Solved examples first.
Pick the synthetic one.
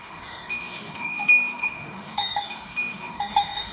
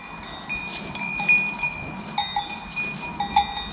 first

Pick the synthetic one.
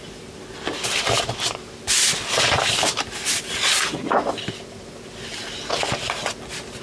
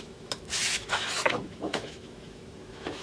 second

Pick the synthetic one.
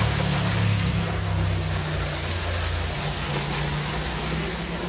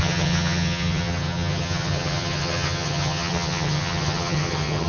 second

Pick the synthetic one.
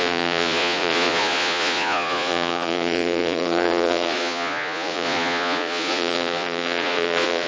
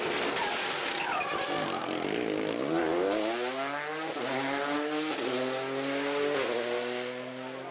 first